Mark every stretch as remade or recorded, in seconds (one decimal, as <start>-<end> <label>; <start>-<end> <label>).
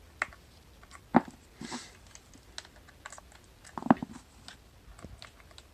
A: 0.0-5.7 recorded